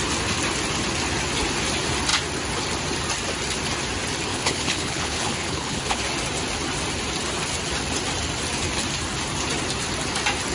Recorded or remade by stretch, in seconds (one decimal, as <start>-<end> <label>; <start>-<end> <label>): 0.0-4.3 recorded; 4.3-6.0 remade; 6.0-10.5 recorded